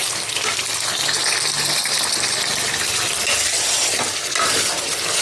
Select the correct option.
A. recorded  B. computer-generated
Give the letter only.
A